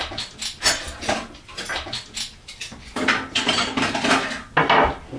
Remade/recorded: recorded